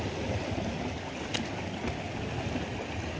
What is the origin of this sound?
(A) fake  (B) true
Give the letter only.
B